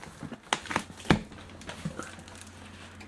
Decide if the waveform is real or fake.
real